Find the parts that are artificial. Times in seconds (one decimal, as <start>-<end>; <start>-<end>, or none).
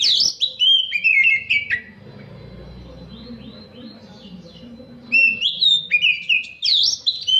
none